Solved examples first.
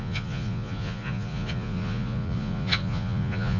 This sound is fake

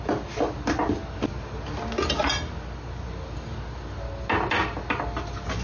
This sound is real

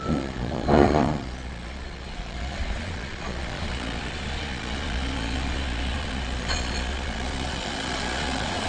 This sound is fake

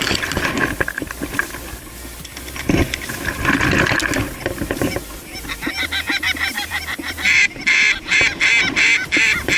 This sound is real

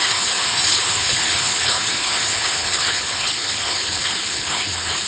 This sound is fake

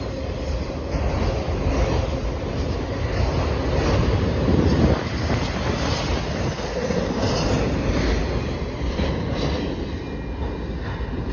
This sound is real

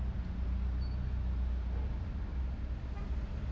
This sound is real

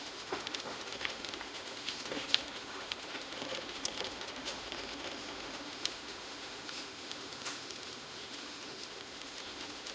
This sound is fake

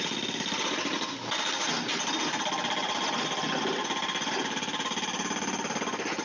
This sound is real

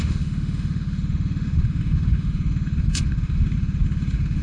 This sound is fake